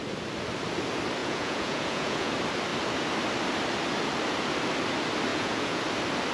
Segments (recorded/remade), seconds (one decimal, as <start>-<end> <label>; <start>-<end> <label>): 0.0-1.2 recorded; 1.2-2.3 remade; 2.3-5.3 recorded; 5.3-5.8 remade; 5.8-6.3 recorded